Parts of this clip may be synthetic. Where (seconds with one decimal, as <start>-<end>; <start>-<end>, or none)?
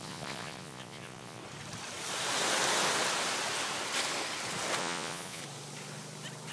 0.0-1.4; 4.8-5.4